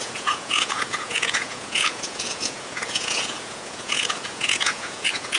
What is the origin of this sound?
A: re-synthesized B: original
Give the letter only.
A